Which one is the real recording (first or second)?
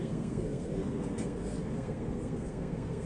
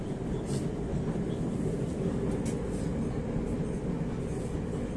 second